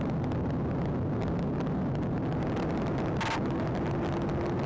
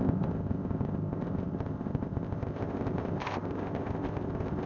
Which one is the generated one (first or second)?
second